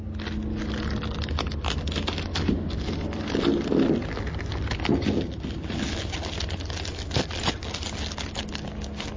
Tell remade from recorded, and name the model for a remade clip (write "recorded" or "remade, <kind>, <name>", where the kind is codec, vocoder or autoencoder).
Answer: recorded